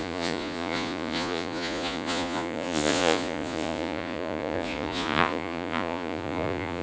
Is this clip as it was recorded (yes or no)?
no